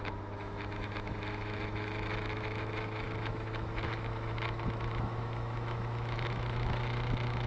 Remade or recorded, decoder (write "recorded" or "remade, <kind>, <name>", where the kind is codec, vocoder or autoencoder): remade, autoencoder, DAC-VAE